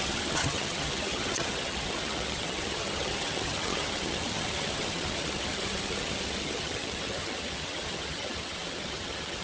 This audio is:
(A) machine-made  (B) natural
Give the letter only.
A